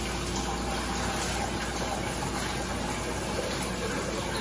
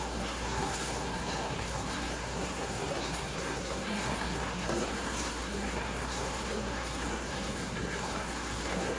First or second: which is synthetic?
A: second